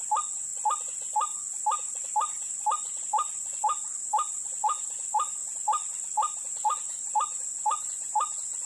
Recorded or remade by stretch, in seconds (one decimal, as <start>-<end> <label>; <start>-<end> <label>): 0.0-8.7 recorded

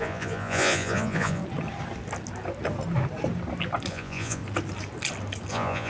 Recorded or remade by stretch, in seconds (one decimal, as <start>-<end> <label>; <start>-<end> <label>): 0.0-1.4 remade; 1.4-3.9 recorded; 3.9-4.4 remade; 4.4-5.5 recorded; 5.5-5.9 remade

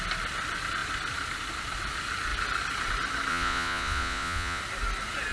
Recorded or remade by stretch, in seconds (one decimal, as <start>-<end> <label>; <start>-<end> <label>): 0.0-3.3 recorded; 3.3-4.6 remade; 4.6-5.3 recorded

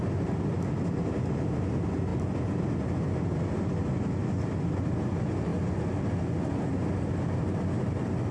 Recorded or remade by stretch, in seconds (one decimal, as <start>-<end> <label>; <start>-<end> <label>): 0.0-8.3 recorded

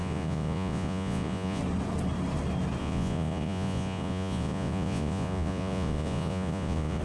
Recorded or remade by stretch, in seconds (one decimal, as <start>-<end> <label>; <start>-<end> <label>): 0.0-1.6 remade; 1.6-2.8 recorded; 2.8-7.0 remade

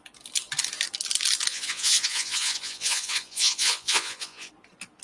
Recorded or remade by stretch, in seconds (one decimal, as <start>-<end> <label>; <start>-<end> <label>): 0.0-1.5 recorded; 1.5-4.5 remade; 4.5-5.0 recorded